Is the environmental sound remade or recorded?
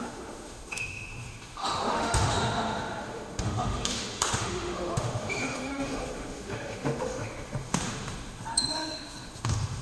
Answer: remade